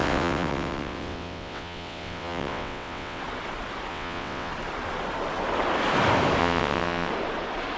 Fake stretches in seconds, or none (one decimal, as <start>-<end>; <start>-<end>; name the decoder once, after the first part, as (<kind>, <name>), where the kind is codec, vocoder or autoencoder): 0.0-3.2 (vocoder, WaveNeXt); 3.9-4.5; 6.4-7.1